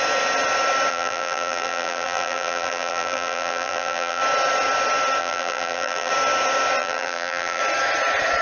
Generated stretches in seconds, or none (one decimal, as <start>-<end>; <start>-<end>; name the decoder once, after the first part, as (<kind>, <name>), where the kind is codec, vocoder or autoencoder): 0.9-4.2 (vocoder, BigVGAN v2); 5.2-6.1; 6.8-7.6

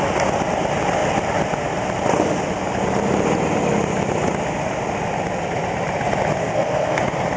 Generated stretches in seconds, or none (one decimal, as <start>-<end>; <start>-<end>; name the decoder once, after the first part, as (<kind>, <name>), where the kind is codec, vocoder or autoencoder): 6.4-7.0 (codec, SNAC)

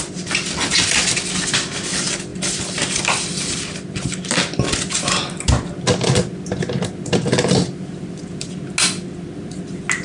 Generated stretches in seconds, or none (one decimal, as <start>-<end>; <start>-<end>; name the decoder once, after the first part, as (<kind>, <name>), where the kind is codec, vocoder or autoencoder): none

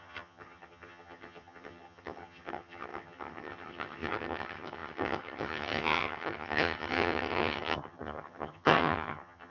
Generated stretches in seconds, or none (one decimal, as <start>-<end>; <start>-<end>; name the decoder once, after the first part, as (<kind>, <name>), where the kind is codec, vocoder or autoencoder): 0.0-9.5 (vocoder, HiFi-GAN)

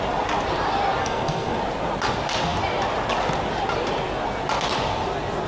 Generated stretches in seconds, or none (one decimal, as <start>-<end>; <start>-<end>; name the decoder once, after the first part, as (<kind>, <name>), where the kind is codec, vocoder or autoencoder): 1.0-1.6 (codec, SNAC)

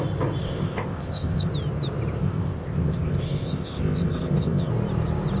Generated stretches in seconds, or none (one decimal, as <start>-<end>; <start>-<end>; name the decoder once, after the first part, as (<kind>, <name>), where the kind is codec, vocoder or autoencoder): 0.4-1.5 (codec, ZipCodec); 2.2-4.7